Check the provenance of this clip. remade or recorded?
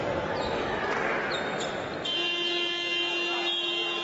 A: recorded